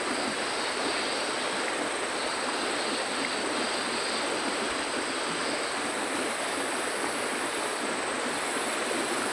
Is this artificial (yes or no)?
no